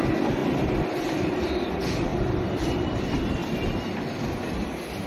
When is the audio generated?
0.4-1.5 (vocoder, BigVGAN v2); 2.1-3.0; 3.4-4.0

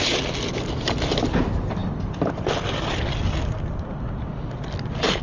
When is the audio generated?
none

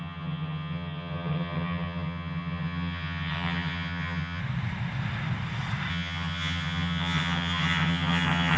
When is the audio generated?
0.0-4.4 (vocoder, HiFi-GAN); 5.9-8.6

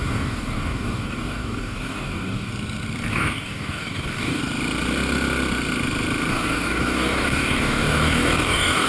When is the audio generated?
0.0-2.5 (codec, DAC); 3.1-4.4; 6.3-8.9

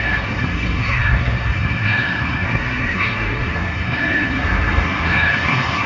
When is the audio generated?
0.0-5.9 (codec, SNAC)